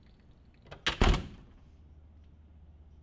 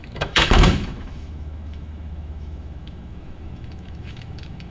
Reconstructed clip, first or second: second